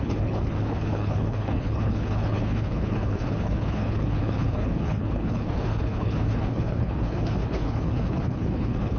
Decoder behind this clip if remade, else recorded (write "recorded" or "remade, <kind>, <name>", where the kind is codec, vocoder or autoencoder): remade, codec, HILCodec